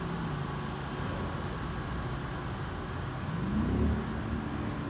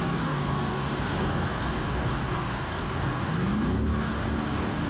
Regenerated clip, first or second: second